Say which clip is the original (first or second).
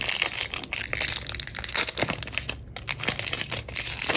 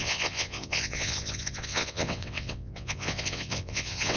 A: first